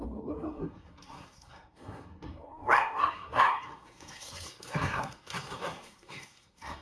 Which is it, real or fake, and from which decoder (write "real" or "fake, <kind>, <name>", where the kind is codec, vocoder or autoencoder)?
fake, codec, SNAC